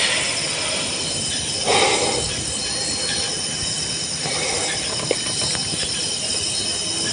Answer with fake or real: real